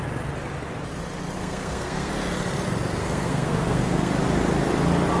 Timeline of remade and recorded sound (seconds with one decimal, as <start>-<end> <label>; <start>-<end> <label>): 0.0-1.4 recorded; 1.4-2.1 remade; 2.1-3.0 recorded; 3.0-4.1 remade; 4.1-5.2 recorded